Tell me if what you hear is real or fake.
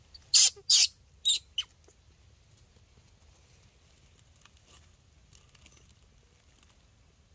real